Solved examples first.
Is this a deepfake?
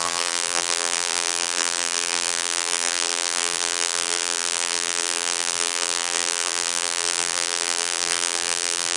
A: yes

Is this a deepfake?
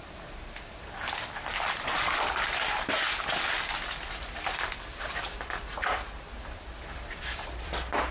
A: yes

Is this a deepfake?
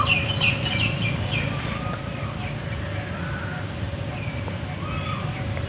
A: no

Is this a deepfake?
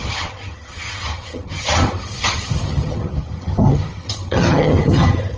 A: yes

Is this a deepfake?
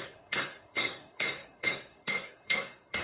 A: yes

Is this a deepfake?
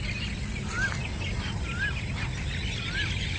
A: no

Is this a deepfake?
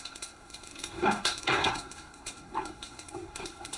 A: yes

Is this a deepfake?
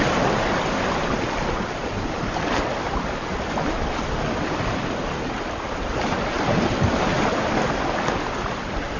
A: no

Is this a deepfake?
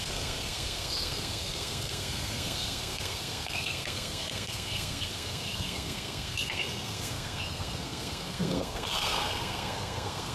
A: yes